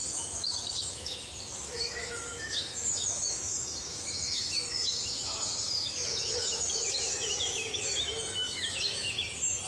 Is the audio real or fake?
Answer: fake